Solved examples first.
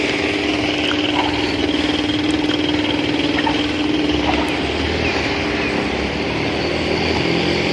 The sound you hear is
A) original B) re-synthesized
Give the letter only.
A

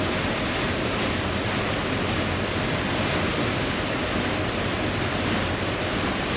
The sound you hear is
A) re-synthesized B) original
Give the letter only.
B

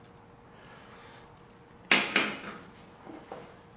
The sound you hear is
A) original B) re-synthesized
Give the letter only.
A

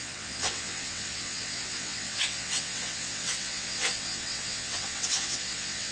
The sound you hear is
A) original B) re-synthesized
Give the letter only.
B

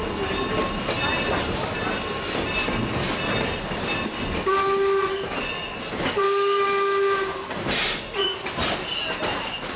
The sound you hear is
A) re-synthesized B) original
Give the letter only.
B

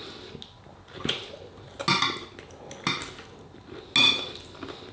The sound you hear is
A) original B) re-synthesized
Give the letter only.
A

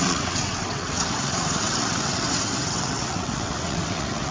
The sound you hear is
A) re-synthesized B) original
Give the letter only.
A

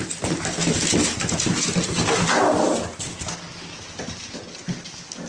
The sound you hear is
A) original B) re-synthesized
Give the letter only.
A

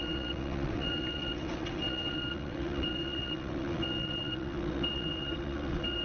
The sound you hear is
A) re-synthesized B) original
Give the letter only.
A